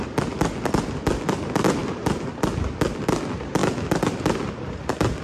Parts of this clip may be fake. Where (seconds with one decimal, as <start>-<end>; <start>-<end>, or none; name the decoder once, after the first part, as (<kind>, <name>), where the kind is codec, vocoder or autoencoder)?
none